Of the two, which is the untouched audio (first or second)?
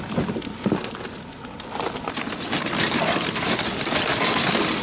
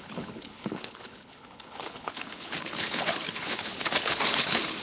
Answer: first